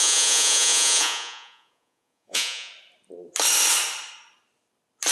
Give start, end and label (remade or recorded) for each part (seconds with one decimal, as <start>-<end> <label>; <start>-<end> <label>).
0.0-2.7 remade; 2.7-5.1 recorded